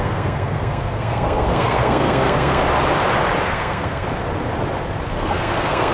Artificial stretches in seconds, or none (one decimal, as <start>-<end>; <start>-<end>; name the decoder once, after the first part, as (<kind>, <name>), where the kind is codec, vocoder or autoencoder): 0.0-2.6 (codec, SNAC); 3.4-4.1; 5.1-5.9